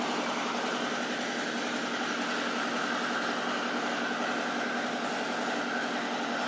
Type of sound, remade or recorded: recorded